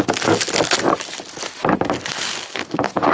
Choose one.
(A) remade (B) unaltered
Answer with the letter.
B